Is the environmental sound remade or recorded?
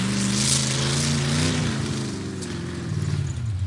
recorded